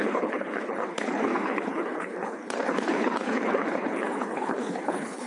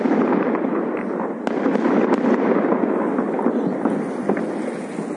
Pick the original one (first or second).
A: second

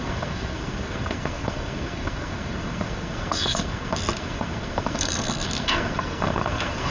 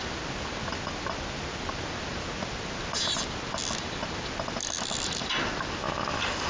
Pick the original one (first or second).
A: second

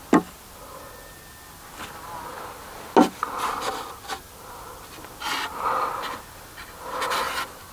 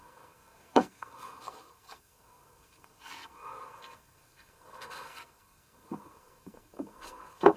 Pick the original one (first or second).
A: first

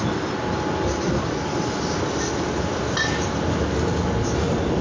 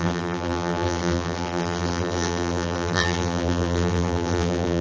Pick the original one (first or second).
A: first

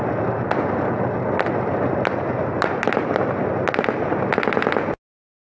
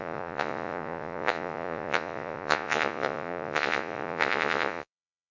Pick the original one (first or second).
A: first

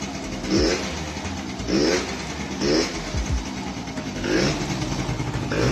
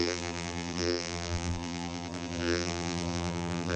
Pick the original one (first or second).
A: first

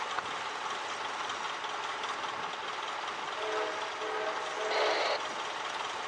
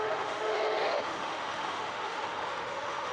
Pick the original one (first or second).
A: first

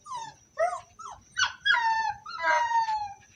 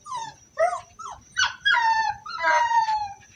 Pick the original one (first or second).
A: first